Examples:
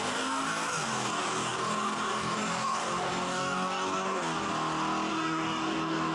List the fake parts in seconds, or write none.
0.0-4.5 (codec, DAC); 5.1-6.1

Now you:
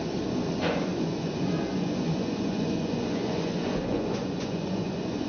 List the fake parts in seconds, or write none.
0.0-5.3 (vocoder, Vocos)

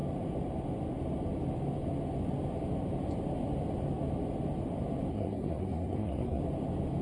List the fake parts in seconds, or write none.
5.1-6.4 (codec, SNAC)

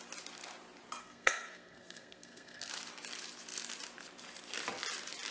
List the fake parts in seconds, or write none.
1.0-2.7 (codec, SNAC)

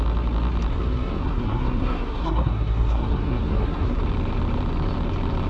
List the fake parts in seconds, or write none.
0.7-4.0 (codec, SNAC)

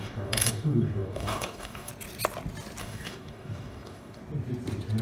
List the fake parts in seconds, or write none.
0.0-1.9 (codec, DAC); 2.8-4.2

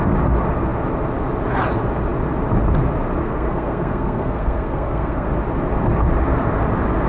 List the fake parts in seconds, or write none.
3.2-5.3 (codec, SNAC)